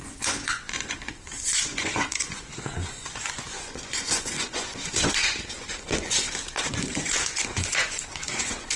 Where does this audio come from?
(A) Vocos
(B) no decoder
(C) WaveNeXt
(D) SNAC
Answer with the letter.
A